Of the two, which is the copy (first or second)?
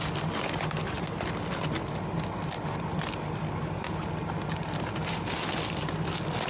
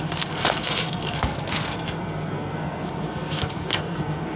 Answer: second